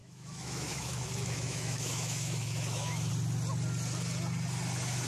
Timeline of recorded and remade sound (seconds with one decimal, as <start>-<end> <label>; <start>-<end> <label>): 0.0-3.1 remade; 3.1-5.1 recorded